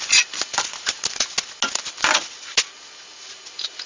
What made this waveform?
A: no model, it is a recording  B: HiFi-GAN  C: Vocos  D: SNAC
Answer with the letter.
A